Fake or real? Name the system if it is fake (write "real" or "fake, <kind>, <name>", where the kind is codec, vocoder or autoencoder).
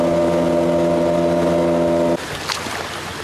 real